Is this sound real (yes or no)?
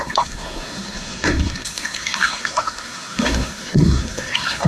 no